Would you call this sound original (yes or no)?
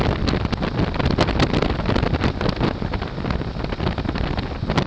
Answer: yes